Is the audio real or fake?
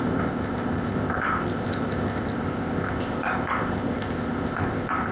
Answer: fake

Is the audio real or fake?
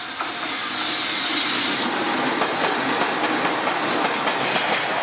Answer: real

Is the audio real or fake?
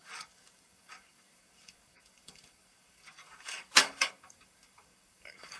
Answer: fake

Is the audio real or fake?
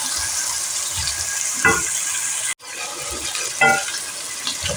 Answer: real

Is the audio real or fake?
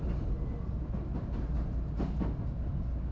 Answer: real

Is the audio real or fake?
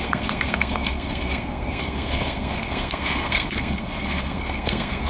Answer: fake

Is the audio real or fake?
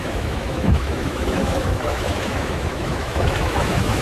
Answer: fake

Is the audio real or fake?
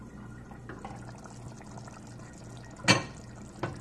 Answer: real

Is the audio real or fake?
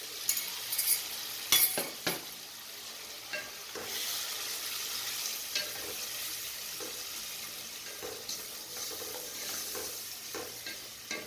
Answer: real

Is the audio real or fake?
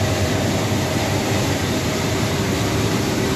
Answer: fake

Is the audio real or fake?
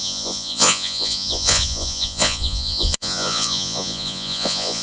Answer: fake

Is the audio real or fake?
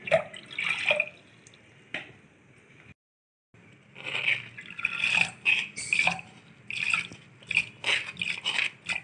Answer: real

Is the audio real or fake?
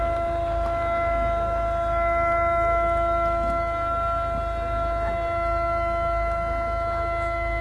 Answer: real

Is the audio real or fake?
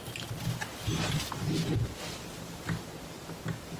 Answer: real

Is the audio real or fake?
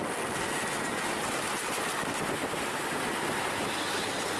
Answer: real